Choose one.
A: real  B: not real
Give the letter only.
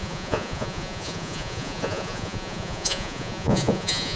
B